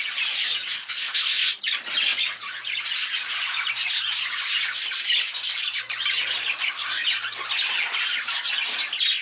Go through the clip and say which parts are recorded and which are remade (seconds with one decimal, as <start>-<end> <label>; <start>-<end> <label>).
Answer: 0.0-0.8 recorded; 0.8-1.5 remade; 1.5-9.2 recorded